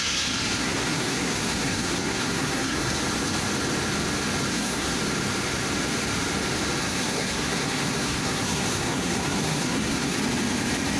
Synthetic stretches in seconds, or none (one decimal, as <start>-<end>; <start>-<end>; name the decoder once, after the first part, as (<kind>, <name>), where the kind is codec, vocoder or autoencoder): 0.0-3.0 (codec, SNAC); 4.5-5.0; 6.8-10.2